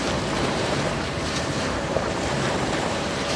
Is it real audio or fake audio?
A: fake